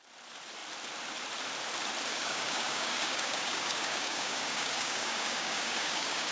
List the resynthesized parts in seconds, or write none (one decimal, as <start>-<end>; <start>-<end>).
2.1-6.3